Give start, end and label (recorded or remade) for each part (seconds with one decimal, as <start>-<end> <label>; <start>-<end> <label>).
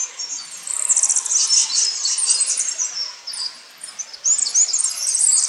0.0-1.6 recorded; 1.6-4.9 remade; 4.9-5.5 recorded